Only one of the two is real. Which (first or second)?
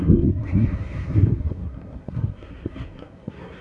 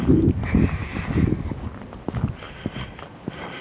second